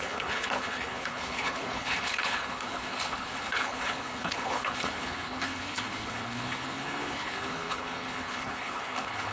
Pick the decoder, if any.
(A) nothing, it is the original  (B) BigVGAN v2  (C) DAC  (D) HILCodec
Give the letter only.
D